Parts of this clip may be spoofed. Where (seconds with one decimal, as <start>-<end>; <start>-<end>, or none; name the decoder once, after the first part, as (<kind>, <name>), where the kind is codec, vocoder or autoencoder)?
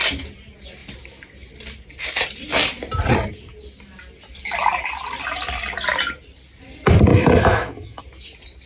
7.1-8.0 (autoencoder, DAC-VAE)